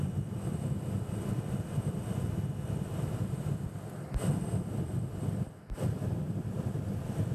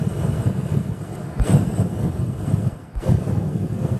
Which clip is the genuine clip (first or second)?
first